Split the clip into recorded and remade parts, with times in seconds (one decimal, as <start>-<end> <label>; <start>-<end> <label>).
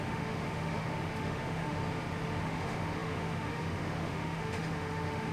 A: 0.0-1.8 remade; 1.8-2.4 recorded; 2.4-5.3 remade